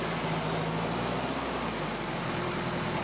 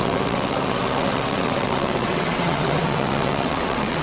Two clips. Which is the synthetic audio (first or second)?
second